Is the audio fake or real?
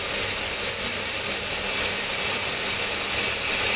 real